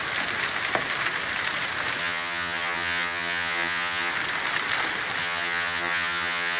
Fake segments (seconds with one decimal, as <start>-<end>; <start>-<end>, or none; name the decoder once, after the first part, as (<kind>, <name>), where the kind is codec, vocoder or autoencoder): 2.0-4.1 (vocoder, HiFi-GAN); 5.2-6.6